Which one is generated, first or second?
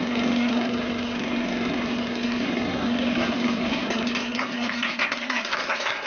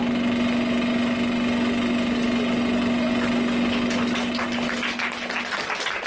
first